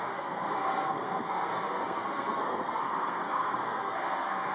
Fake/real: fake